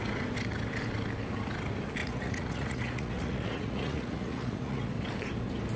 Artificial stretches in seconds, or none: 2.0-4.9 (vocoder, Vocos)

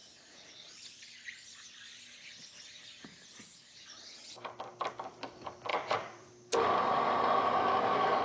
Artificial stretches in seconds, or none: 5.7-6.3 (vocoder, Vocos)

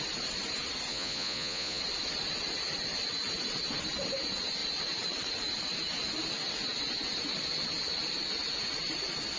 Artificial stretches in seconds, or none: 0.9-1.8 (vocoder, Vocos)

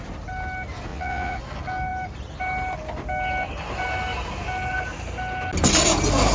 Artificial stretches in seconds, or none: 0.9-1.4 (vocoder, Vocos)

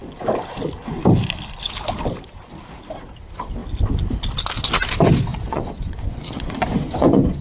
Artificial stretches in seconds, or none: 5.3-7.4 (vocoder, Vocos)

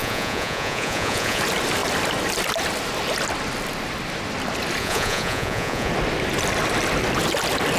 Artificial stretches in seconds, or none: 0.0-1.4 (vocoder, Vocos); 4.8-5.9

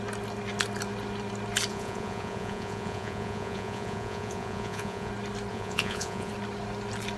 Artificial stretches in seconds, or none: 1.7-5.1 (vocoder, Vocos); 5.5-6.3

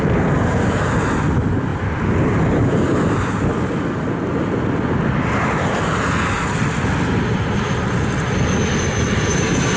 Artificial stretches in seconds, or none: none